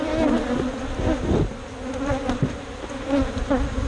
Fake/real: real